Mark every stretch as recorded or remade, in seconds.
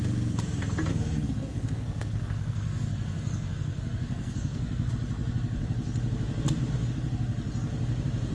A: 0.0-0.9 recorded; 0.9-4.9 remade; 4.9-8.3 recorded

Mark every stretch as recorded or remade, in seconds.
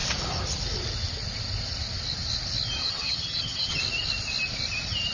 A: 0.0-2.8 recorded; 2.8-3.8 remade; 3.8-5.1 recorded